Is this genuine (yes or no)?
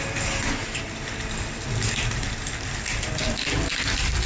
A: yes